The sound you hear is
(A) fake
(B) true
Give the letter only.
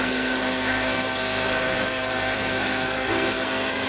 A